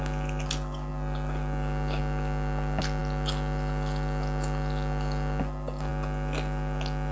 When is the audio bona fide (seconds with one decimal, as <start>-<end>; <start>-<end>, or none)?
0.0-7.1